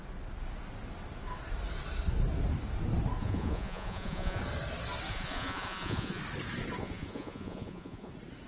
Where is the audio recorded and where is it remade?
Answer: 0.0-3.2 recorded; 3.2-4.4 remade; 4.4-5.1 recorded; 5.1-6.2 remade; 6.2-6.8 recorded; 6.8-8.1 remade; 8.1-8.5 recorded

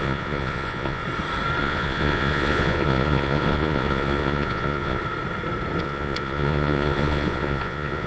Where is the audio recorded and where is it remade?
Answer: 0.0-1.0 remade; 1.0-1.6 recorded; 1.6-5.0 remade; 5.0-5.8 recorded; 5.8-8.1 remade

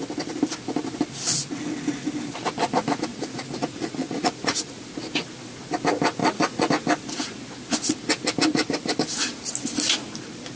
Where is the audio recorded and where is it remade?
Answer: 0.0-3.1 recorded; 3.1-4.7 remade; 4.7-6.2 recorded; 6.2-6.7 remade; 6.7-10.6 recorded

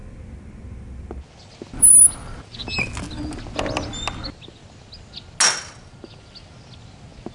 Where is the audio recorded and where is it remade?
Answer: 0.0-7.3 recorded

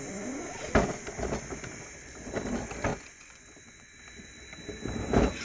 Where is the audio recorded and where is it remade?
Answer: 0.0-2.9 recorded; 2.9-4.0 remade; 4.0-5.4 recorded

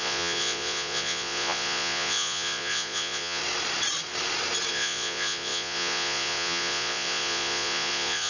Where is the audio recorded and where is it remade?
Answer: 0.0-3.4 remade; 3.4-4.7 recorded; 4.7-8.3 remade

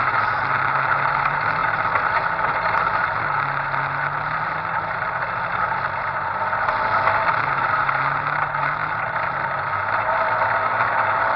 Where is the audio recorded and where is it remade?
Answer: 0.0-11.4 recorded

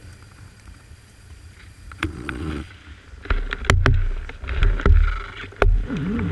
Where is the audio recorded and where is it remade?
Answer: 0.0-2.7 remade; 2.7-6.3 recorded